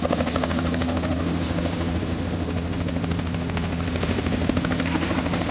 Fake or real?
real